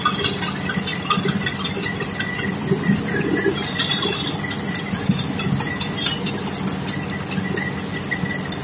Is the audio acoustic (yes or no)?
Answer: yes